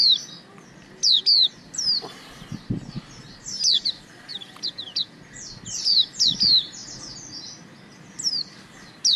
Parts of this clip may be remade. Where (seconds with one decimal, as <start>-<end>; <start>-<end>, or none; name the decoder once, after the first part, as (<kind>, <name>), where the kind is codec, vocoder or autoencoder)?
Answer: 4.3-5.2 (vocoder, Vocos)